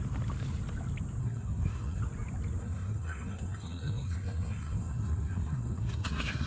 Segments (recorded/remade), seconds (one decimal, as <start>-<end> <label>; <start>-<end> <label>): 0.0-1.2 recorded; 1.2-2.0 remade; 2.0-2.6 recorded; 2.6-6.5 remade